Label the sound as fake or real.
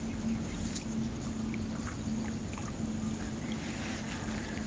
real